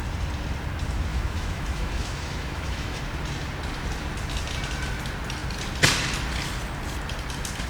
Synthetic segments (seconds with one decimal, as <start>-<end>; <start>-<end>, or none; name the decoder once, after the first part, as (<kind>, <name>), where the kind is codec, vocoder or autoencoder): 1.1-3.0 (autoencoder, DAC-VAE)